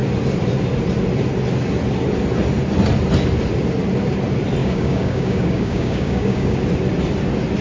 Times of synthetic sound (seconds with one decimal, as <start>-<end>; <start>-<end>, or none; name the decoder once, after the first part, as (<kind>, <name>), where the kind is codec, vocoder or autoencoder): 4.6-6.6 (codec, DAC)